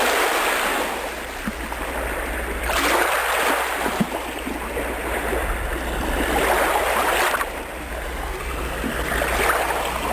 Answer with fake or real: real